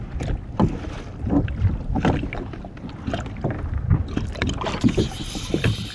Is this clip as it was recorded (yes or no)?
yes